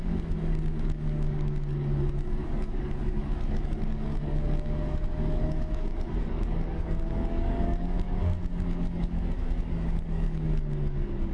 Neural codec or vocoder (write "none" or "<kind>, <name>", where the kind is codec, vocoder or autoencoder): codec, DAC